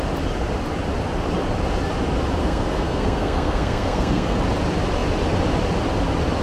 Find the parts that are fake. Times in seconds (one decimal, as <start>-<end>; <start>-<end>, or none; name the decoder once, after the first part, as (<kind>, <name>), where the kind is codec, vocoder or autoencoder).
2.4-4.4 (codec, SNAC)